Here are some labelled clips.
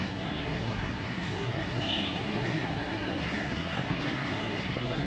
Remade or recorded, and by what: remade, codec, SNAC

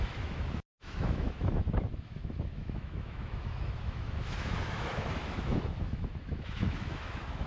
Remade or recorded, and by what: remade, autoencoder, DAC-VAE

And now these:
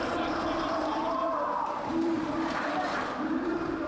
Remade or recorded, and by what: remade, vocoder, BigVGAN v2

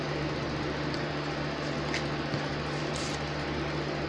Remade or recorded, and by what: recorded